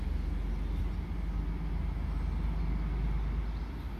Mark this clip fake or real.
real